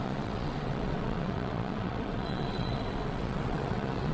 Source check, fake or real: fake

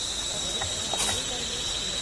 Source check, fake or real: fake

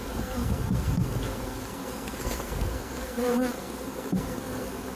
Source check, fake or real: fake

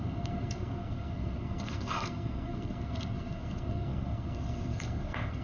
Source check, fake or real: fake